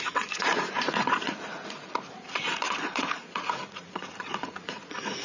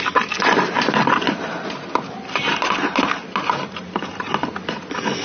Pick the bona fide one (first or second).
second